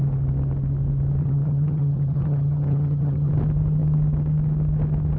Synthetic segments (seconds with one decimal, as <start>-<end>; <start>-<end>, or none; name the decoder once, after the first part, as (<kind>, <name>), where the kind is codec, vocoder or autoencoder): 1.2-3.3 (vocoder, HiFi-GAN)